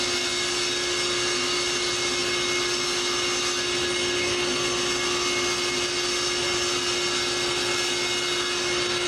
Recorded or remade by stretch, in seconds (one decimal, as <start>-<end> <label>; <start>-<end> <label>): 0.0-9.1 recorded